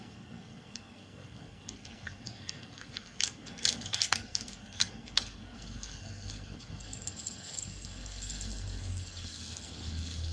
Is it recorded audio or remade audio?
remade